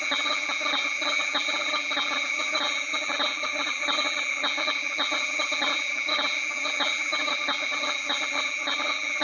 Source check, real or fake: fake